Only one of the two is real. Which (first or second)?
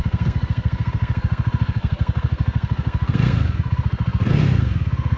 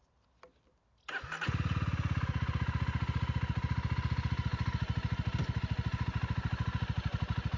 second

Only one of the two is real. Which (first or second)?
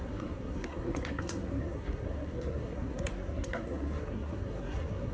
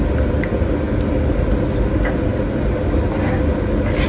second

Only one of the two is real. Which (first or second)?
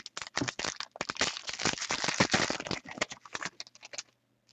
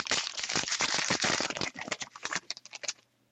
first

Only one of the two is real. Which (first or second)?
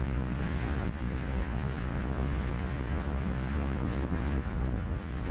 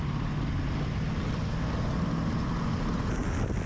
second